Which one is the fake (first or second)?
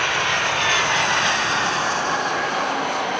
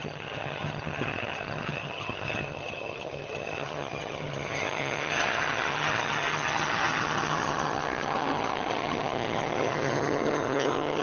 second